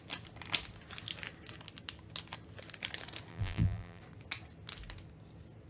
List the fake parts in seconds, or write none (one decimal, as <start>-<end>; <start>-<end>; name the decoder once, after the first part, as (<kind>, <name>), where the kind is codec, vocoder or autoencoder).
3.3-4.0 (vocoder, BigVGAN v2)

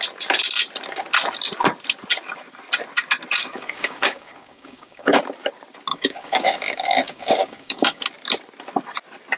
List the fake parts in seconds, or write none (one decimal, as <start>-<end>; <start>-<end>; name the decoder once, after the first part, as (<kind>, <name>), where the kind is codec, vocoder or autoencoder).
3.4-5.2 (codec, DAC); 5.9-8.0

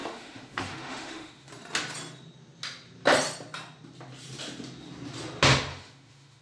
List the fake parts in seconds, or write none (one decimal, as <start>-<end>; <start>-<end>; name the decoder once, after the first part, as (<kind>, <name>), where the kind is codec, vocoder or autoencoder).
0.0-1.5 (autoencoder, DAC-VAE); 5.7-6.4

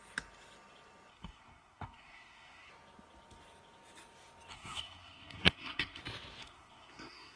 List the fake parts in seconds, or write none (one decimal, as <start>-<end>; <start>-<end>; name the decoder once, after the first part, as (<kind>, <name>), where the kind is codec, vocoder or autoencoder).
1.1-2.7 (codec, SNAC); 4.5-6.0; 6.4-7.4

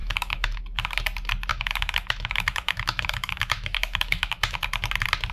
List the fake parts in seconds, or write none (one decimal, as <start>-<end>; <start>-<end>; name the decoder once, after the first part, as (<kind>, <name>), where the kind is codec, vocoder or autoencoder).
0.0-0.6 (autoencoder, DAC-VAE); 1.5-4.6

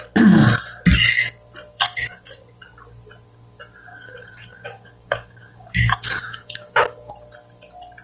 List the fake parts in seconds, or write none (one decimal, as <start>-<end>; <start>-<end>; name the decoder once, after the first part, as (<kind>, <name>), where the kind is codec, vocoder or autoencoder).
1.7-2.3 (codec, DAC); 3.9-7.1